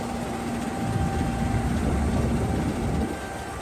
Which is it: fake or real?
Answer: real